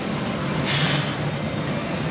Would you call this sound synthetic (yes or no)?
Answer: no